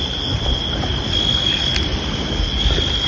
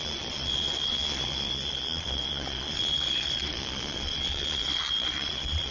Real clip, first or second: first